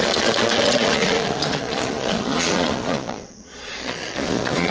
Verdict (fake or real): fake